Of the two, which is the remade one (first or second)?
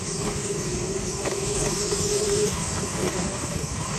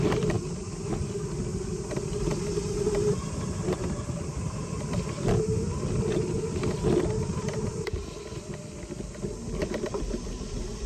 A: first